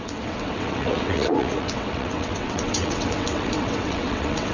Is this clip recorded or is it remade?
remade